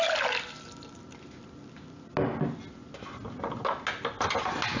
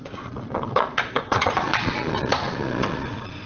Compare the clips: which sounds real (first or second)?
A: first